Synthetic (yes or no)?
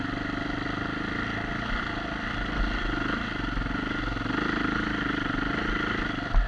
no